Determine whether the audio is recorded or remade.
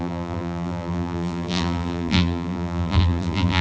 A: remade